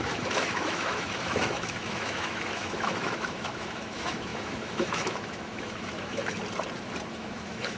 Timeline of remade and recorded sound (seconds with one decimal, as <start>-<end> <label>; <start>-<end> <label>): 0.0-6.4 remade; 6.4-7.1 recorded; 7.1-7.8 remade